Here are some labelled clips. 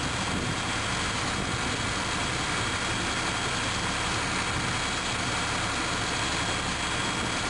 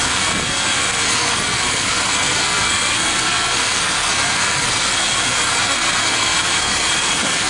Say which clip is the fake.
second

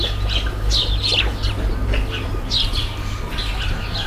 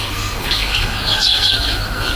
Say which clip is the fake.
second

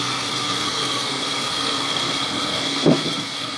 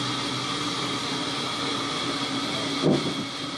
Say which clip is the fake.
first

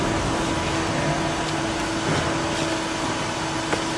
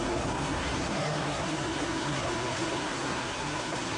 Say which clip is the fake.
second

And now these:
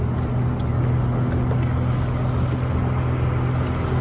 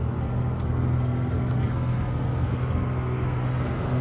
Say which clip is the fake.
second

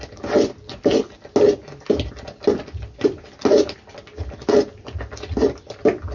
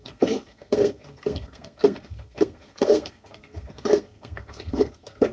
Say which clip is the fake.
second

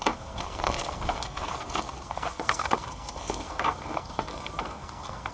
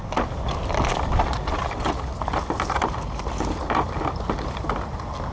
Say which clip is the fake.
first